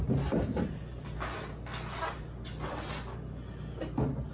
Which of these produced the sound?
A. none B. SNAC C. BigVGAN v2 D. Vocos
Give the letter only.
A